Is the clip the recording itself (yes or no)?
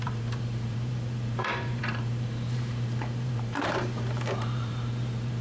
no